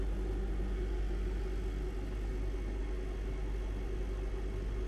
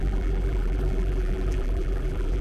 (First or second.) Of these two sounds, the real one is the first